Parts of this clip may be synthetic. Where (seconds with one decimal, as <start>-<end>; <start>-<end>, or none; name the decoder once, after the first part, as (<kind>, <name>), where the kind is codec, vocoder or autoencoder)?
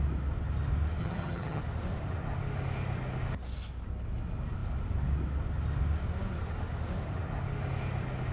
1.0-1.6 (vocoder, HiFi-GAN)